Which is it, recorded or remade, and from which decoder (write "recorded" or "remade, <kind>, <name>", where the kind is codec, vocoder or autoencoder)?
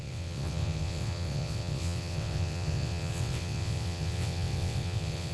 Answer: remade, vocoder, WaveNeXt